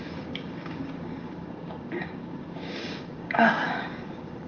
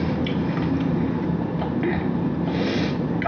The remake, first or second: first